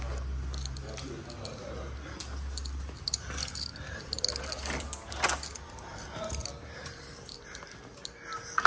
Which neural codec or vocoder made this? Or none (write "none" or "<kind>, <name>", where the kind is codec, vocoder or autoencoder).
none